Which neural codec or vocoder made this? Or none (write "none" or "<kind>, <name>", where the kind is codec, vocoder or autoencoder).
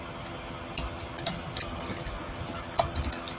none